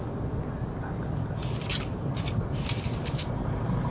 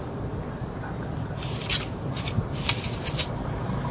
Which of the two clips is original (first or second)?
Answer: first